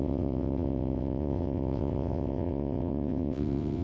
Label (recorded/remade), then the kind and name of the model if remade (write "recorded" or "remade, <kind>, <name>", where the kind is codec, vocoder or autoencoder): remade, vocoder, WaveNeXt